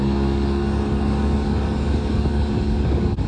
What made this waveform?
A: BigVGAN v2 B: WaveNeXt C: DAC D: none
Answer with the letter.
C